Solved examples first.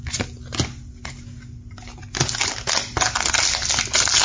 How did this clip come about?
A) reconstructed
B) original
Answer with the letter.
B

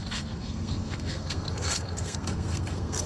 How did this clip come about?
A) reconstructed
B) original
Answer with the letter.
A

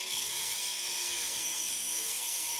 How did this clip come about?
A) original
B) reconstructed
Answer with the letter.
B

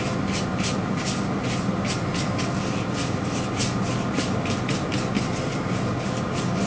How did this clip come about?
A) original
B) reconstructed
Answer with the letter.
A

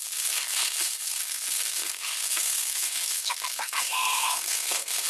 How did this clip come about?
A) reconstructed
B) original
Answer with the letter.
A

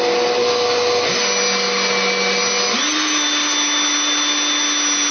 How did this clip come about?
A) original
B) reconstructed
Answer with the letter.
A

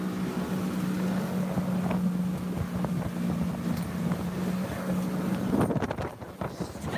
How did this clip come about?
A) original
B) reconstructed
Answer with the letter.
A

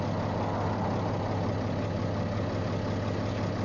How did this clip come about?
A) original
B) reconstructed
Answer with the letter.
A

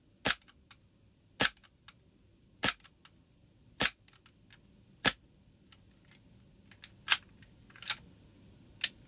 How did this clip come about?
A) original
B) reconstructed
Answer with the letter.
A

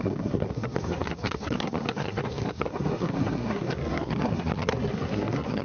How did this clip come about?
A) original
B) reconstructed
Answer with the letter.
B